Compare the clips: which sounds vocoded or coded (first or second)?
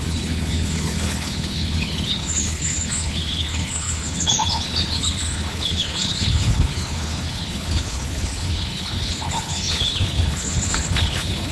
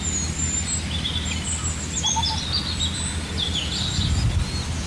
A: first